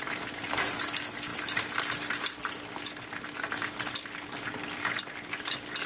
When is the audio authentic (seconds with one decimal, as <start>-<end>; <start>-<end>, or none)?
0.0-5.9